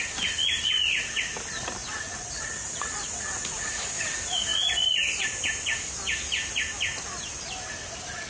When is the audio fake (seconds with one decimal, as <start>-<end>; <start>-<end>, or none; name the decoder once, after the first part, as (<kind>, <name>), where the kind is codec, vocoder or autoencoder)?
1.8-3.8 (vocoder, Vocos)